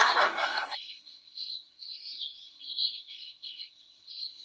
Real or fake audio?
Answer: fake